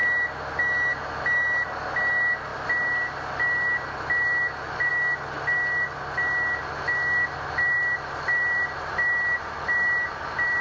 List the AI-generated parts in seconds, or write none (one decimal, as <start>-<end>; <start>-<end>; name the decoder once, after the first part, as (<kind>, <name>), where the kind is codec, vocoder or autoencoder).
none